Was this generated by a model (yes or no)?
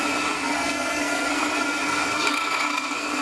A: yes